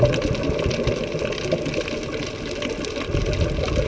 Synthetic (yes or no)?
no